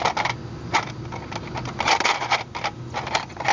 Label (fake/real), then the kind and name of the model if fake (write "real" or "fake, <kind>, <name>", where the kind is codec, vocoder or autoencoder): real